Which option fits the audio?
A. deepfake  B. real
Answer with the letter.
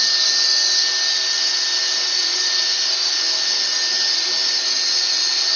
B